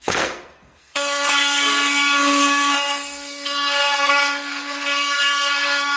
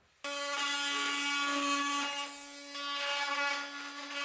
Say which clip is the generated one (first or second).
first